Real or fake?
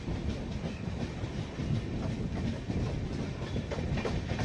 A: real